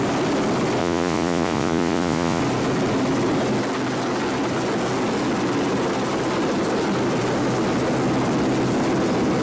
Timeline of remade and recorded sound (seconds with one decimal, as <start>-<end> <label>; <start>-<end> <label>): 0.0-0.8 recorded; 0.8-2.4 remade; 2.4-9.4 recorded

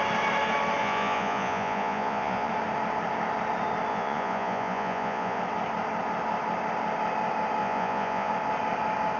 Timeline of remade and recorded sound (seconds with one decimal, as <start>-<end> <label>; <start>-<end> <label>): 0.0-0.8 recorded; 0.8-2.5 remade; 2.5-3.9 recorded; 3.9-5.4 remade; 5.4-7.6 recorded; 7.6-8.3 remade; 8.3-9.2 recorded